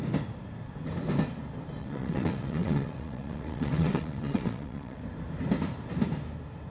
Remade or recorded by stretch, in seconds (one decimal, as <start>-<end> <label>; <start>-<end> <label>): 0.0-1.8 recorded; 1.8-5.0 remade; 5.0-6.7 recorded